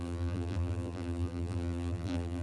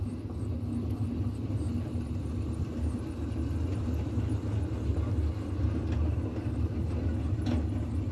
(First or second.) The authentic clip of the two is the second